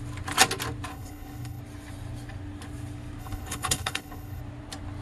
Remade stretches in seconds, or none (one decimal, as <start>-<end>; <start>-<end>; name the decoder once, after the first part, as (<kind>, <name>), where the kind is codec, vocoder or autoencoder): 0.9-1.6 (codec, HILCodec); 3.2-4.4